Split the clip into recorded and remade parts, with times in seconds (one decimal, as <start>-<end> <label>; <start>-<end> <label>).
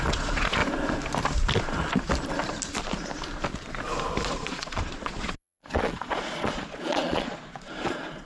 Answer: 0.0-0.6 remade; 0.6-4.3 recorded; 4.3-8.3 remade